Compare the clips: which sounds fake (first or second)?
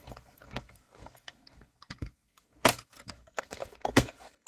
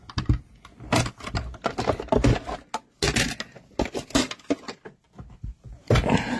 first